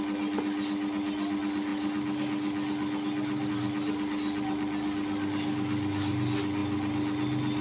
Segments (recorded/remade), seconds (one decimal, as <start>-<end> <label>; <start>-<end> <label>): 0.0-7.6 recorded